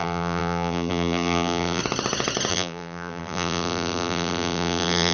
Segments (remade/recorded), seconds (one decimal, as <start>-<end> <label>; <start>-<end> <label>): 0.0-1.8 remade; 1.8-2.5 recorded; 2.5-5.1 remade